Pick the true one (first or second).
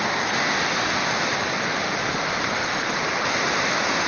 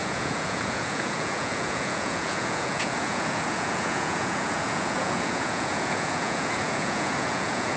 first